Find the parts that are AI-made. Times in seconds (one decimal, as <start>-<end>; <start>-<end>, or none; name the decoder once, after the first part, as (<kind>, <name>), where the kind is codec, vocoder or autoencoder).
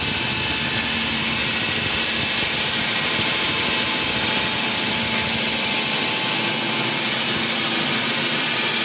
none